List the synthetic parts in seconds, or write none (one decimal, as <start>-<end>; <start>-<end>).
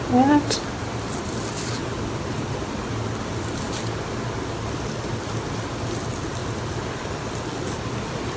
1.8-2.9